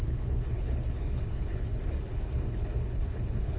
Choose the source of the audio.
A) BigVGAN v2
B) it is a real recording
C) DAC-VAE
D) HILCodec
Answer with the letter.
D